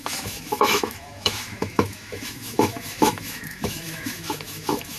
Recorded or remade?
remade